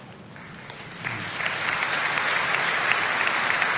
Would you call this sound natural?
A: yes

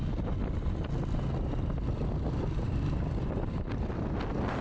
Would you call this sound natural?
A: yes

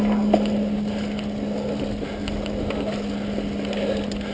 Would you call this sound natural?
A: yes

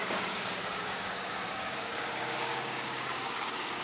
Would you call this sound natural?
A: no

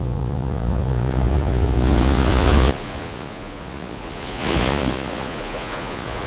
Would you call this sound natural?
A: no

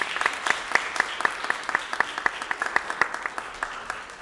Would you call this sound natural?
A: yes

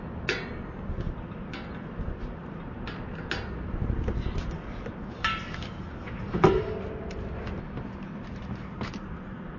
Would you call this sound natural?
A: yes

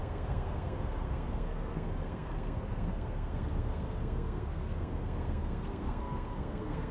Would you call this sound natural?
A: no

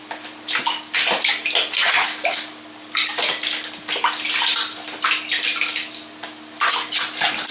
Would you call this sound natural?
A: yes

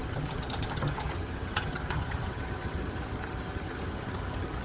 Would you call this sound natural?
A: no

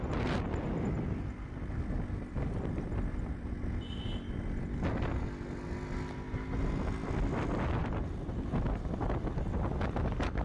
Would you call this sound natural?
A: yes